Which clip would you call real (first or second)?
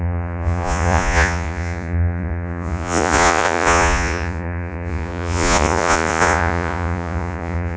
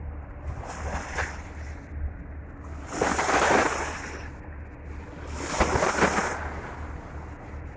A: second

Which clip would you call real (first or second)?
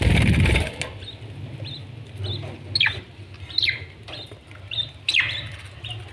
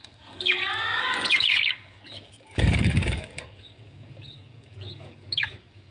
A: first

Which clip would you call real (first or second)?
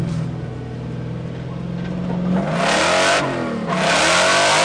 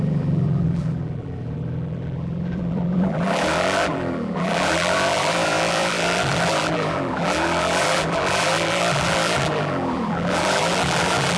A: first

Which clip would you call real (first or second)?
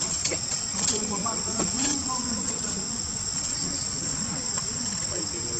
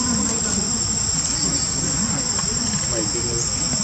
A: second